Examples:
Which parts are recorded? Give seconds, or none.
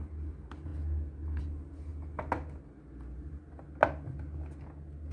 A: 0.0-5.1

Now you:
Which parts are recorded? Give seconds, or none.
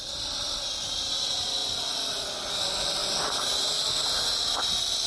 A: 0.0-5.1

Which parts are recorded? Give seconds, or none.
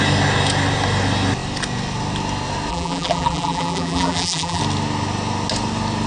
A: 0.0-2.7; 4.6-6.1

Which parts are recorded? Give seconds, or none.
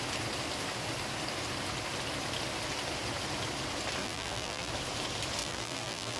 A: 0.0-4.0; 4.7-5.4